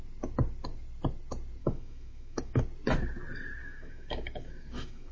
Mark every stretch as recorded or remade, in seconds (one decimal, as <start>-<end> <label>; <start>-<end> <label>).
0.0-1.6 recorded; 1.6-2.6 remade; 2.6-3.6 recorded; 3.6-5.1 remade